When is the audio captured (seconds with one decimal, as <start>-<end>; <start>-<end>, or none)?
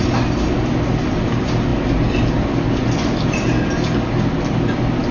0.0-5.1